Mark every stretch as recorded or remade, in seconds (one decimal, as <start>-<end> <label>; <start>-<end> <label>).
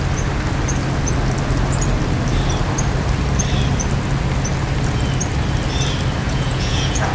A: 0.0-6.2 recorded; 6.2-7.1 remade